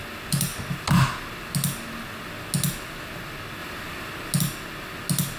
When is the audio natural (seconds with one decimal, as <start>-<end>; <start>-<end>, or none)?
0.0-5.4